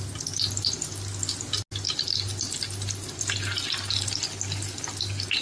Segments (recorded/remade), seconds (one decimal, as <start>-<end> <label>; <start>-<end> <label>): 0.0-5.4 recorded